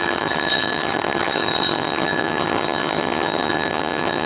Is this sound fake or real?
fake